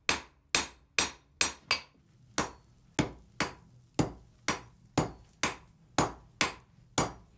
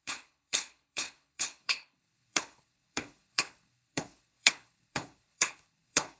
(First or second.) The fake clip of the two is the second